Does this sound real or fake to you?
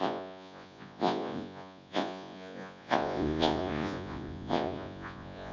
fake